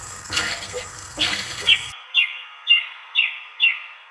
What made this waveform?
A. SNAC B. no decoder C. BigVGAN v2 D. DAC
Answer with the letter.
A